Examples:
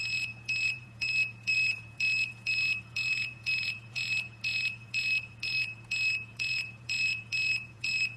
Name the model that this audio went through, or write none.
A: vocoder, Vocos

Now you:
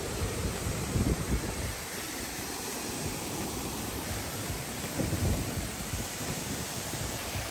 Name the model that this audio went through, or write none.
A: vocoder, BigVGAN v2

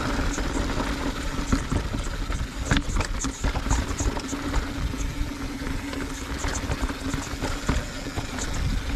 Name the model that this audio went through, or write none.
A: none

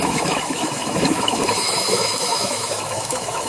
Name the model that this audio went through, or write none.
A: autoencoder, DAC-VAE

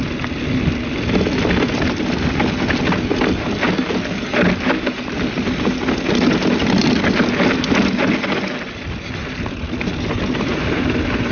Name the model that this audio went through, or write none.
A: none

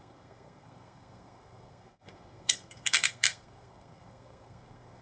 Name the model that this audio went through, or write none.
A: codec, SNAC